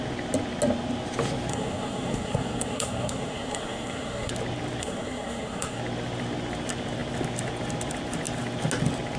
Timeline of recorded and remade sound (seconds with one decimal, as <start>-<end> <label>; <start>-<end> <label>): 0.0-1.5 recorded; 1.5-4.3 remade; 4.3-4.8 recorded; 4.8-5.8 remade; 5.8-9.2 recorded